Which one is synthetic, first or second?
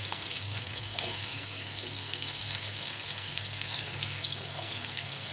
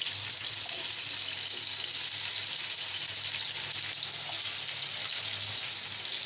first